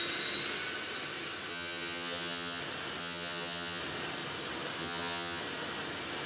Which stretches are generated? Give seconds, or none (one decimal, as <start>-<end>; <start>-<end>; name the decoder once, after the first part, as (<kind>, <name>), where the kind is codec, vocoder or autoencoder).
1.5-2.6 (vocoder, HiFi-GAN); 3.0-3.8; 4.8-5.4